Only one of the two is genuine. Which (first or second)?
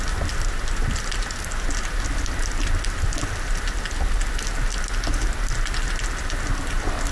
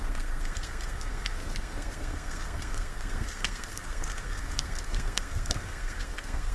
first